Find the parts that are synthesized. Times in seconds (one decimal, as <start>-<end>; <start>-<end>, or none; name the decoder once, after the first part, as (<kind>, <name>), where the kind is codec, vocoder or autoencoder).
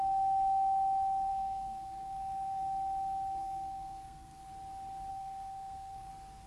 1.3-2.6 (codec, SNAC); 3.4-4.5; 5.1-6.1